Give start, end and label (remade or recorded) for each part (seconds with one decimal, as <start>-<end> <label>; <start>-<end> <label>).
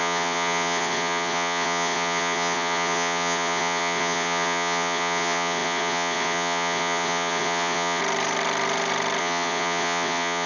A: 0.0-8.0 remade; 8.0-9.2 recorded; 9.2-10.5 remade